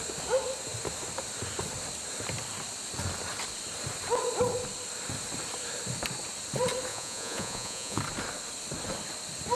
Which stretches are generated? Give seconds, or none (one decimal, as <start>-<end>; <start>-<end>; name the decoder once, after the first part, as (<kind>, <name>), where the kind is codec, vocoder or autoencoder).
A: 6.9-8.0 (vocoder, Vocos)